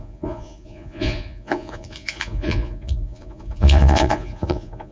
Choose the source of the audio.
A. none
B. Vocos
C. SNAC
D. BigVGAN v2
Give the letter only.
B